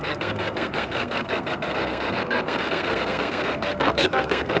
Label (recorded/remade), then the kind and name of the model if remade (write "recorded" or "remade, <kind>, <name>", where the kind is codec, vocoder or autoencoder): remade, codec, SNAC